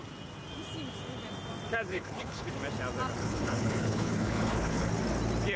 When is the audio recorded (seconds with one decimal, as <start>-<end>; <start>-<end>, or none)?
0.0-1.9; 2.5-3.2; 4.9-5.6